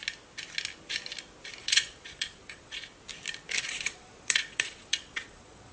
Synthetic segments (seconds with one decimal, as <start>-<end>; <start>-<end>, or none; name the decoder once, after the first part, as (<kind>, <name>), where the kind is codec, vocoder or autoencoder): 1.6-2.8 (vocoder, Vocos); 3.6-5.7